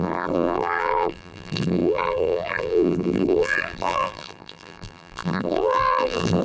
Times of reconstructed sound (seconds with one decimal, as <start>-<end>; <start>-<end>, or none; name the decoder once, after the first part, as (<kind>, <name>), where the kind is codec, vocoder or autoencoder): 0.0-6.4 (vocoder, BigVGAN v2)